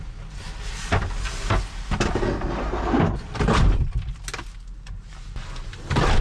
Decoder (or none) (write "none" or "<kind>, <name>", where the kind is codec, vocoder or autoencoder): none